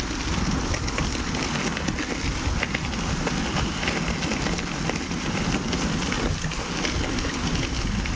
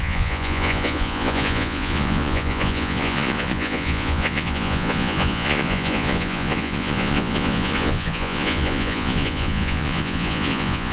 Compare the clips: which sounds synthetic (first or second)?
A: second